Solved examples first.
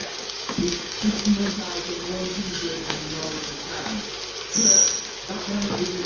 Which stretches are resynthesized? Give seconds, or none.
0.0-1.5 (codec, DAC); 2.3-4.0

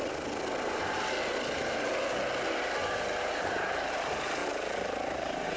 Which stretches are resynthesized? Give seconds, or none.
2.8-3.9 (vocoder, BigVGAN v2); 4.4-5.6

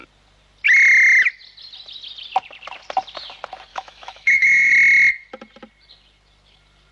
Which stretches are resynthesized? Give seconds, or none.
3.7-4.7 (autoencoder, DAC-VAE)

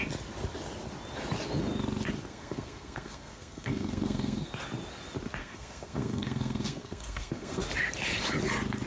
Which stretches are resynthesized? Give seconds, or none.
2.3-4.5 (codec, SNAC); 5.4-7.6

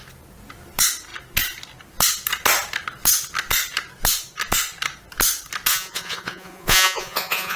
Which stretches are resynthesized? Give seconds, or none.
5.7-7.6 (vocoder, Vocos)

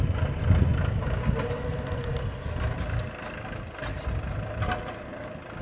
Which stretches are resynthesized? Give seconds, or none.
none